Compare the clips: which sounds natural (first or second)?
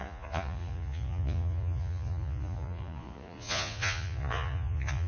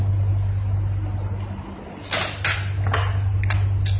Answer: second